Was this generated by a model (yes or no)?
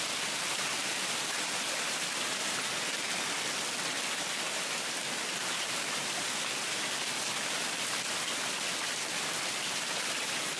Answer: no